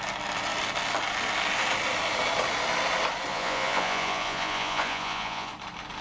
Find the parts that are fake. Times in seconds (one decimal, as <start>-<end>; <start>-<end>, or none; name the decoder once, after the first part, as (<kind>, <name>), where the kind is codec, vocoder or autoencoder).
3.3-5.5 (vocoder, Vocos)